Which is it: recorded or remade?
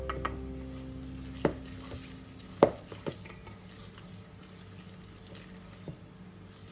recorded